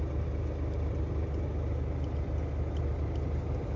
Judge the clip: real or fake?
real